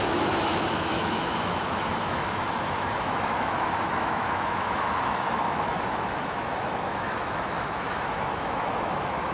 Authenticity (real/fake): fake